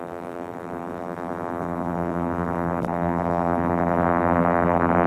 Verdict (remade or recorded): remade